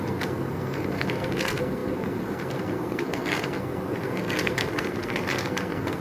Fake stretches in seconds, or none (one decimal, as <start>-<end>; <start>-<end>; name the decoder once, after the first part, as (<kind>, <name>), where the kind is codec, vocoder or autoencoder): 0.0-6.0 (codec, SNAC)